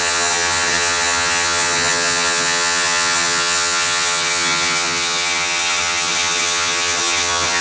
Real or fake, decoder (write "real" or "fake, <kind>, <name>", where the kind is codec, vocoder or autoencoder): fake, vocoder, HiFi-GAN